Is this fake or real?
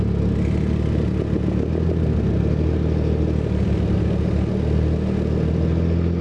real